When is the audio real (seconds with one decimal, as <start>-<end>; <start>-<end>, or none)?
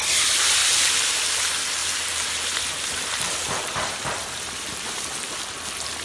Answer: 0.0-0.6; 1.2-1.8; 5.4-6.0